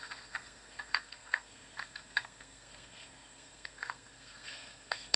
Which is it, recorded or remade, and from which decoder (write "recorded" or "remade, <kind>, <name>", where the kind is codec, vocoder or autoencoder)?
remade, codec, SNAC